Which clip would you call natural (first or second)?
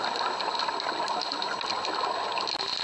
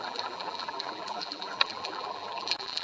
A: first